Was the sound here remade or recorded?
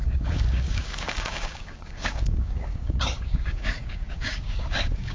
remade